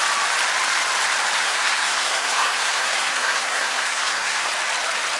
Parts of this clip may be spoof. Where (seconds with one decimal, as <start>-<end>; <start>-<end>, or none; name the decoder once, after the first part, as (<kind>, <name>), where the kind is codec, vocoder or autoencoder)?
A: 1.4-4.5 (codec, SNAC)